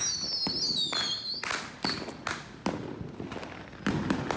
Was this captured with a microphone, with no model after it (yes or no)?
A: yes